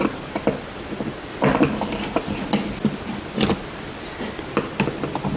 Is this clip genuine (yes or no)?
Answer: yes